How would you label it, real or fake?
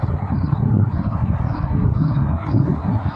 fake